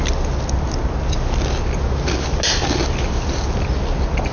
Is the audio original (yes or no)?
yes